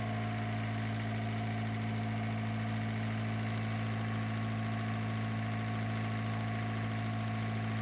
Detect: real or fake real